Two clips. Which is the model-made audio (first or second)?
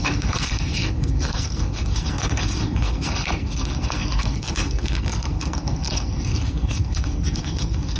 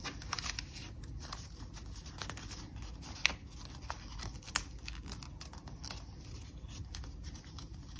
first